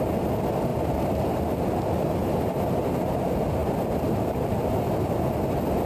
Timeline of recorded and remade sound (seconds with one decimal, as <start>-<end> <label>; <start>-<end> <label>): 0.0-0.7 recorded; 0.7-1.7 remade; 1.7-2.2 recorded; 2.2-3.2 remade; 3.2-5.9 recorded

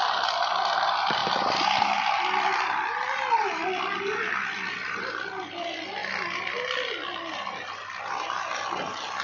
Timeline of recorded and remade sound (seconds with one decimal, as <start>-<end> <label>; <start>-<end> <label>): 0.0-1.2 recorded; 1.2-5.0 remade; 5.0-9.2 recorded